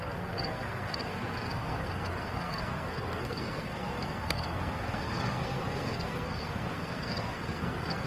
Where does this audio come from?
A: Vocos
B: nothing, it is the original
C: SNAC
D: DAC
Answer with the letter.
C